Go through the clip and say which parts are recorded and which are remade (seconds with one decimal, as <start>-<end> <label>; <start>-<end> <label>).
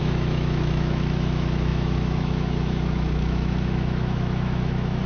0.0-5.1 remade